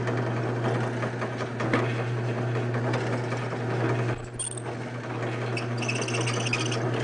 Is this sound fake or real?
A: real